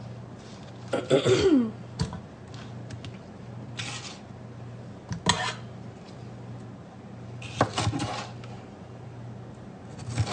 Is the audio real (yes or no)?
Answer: yes